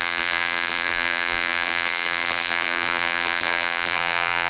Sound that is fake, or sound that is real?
fake